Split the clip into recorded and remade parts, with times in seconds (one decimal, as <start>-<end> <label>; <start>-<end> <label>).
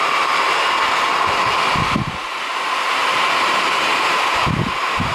0.0-3.0 recorded; 3.0-4.6 remade; 4.6-5.1 recorded